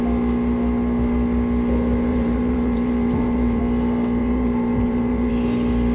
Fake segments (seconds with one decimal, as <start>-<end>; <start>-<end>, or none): 2.1-3.6; 4.2-5.3